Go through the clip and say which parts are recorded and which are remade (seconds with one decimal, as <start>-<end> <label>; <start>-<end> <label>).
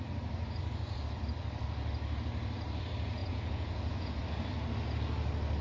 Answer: 0.0-3.2 recorded; 3.2-4.2 remade; 4.2-5.6 recorded